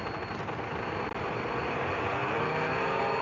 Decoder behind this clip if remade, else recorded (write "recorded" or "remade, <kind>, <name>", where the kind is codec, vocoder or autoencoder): recorded